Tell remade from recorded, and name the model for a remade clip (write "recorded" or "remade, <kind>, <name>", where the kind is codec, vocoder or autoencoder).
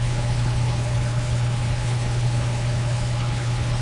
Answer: remade, codec, HILCodec